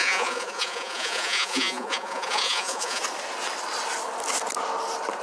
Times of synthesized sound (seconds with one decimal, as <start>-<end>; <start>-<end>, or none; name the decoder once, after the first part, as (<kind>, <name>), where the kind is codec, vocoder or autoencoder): 0.0-3.0 (vocoder, Vocos)